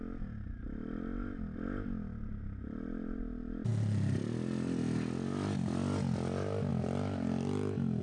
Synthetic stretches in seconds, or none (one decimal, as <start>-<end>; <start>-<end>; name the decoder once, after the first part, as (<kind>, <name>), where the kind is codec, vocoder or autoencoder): none